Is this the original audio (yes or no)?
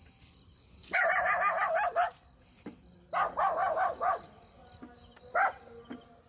yes